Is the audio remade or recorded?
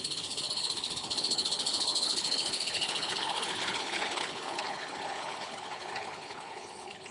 remade